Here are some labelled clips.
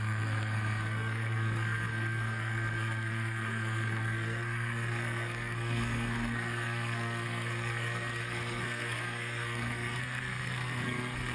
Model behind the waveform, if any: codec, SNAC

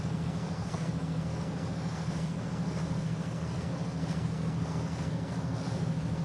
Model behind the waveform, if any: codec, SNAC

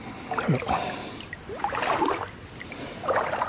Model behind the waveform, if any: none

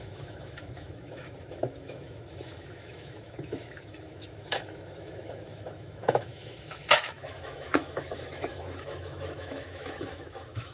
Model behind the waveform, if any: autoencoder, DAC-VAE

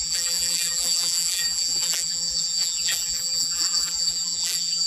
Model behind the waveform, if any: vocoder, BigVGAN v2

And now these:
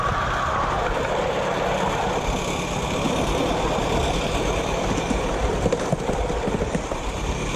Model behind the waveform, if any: none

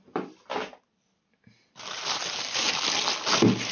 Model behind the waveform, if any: none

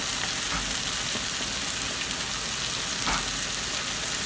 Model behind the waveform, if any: none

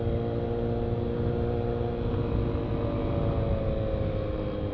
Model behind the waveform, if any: none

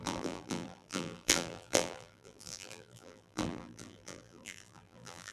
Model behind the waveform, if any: vocoder, BigVGAN v2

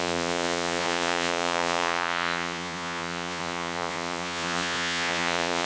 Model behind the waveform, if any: vocoder, Vocos